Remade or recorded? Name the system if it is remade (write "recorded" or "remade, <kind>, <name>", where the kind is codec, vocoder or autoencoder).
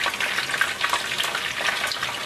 recorded